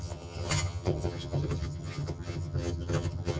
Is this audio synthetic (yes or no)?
yes